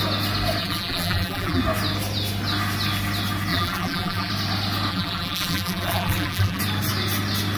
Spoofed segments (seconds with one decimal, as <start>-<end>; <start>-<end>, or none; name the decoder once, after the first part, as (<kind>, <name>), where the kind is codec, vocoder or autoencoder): 0.6-1.6 (vocoder, BigVGAN v2); 3.5-4.3; 4.9-6.6